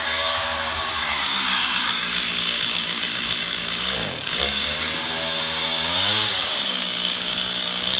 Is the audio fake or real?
fake